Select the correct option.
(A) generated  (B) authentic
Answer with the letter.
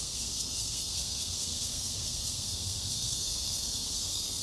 A